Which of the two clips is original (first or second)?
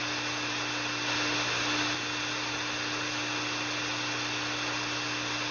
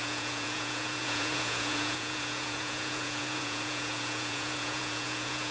first